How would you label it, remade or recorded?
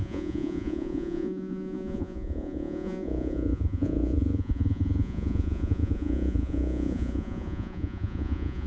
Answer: remade